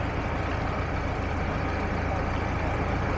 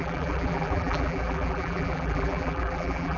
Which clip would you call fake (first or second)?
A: second